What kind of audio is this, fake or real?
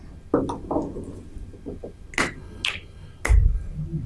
real